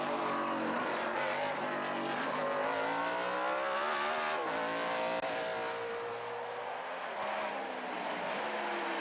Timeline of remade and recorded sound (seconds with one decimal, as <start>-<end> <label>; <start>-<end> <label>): 0.0-9.0 recorded